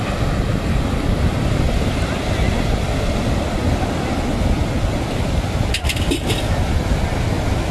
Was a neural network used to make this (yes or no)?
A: no